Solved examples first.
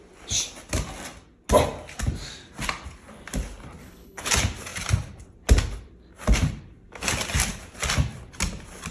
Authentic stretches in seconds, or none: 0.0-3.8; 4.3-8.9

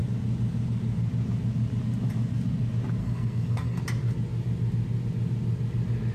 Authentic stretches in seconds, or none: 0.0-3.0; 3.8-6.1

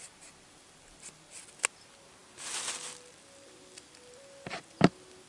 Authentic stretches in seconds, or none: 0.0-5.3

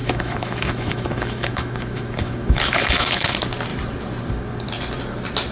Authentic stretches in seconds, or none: 3.3-5.5

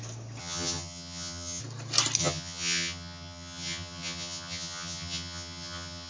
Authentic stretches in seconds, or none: 0.0-0.4; 1.6-2.2

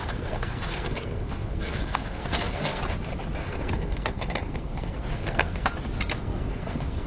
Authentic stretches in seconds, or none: 2.8-3.4; 5.7-6.2